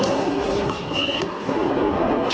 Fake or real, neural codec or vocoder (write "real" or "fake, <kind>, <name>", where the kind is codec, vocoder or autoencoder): fake, codec, SNAC